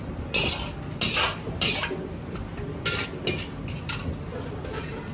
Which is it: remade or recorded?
recorded